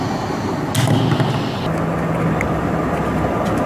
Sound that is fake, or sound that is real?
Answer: real